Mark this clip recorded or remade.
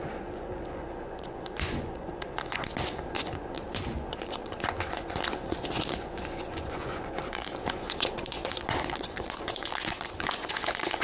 remade